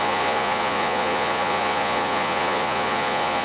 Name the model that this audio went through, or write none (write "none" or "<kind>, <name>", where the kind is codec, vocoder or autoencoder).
vocoder, Vocos